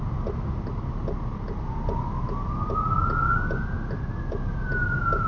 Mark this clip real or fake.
real